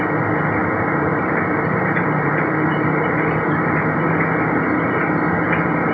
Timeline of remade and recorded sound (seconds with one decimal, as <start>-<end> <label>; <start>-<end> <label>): 0.0-0.6 recorded; 0.6-3.6 remade; 3.6-5.9 recorded